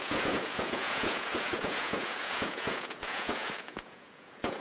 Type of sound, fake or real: fake